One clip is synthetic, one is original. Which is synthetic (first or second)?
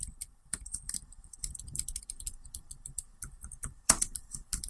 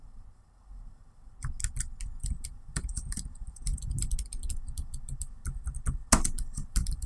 first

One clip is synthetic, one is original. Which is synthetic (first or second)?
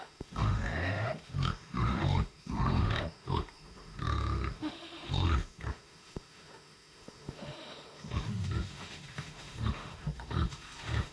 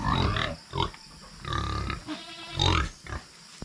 first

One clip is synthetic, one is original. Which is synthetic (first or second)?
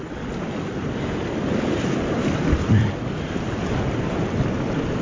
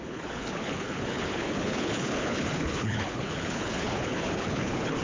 second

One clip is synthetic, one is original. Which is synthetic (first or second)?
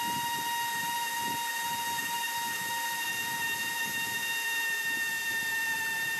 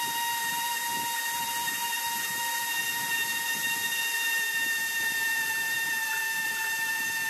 second